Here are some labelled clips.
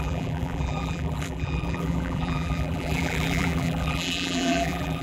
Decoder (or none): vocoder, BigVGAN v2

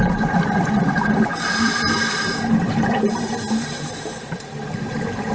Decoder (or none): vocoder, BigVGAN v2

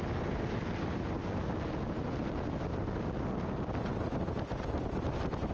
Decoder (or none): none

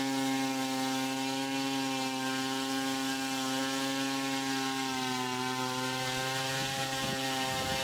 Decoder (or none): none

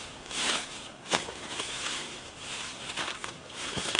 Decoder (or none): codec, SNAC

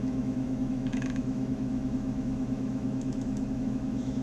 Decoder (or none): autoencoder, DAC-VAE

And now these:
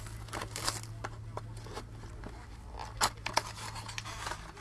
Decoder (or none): none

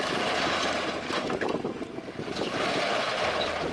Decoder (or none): none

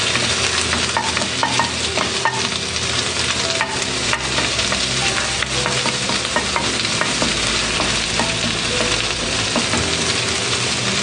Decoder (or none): none